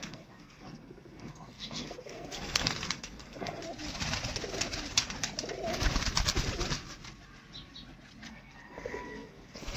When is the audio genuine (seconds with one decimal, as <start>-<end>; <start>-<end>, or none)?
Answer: 3.6-8.3